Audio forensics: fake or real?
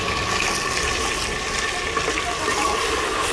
real